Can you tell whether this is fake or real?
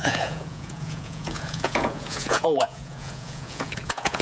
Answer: fake